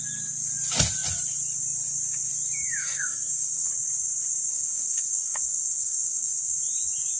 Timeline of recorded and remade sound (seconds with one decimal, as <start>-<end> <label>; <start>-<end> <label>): 0.0-2.8 recorded; 2.8-3.7 remade; 3.7-4.5 recorded; 4.5-6.6 remade; 6.6-7.2 recorded